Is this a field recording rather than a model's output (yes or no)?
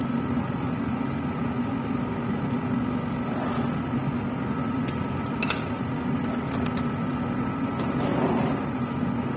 yes